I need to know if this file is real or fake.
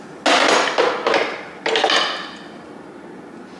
real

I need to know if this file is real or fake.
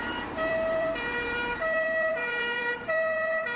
fake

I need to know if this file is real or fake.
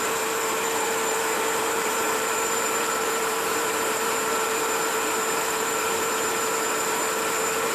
fake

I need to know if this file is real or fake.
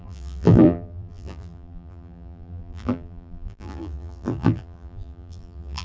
fake